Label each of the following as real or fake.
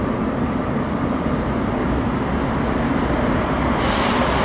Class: real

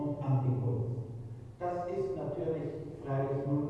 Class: real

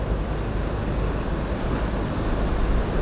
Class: real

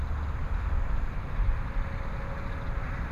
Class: real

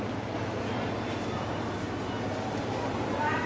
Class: real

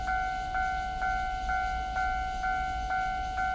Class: real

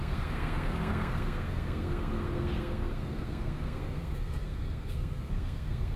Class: fake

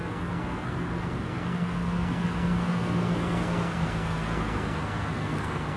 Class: fake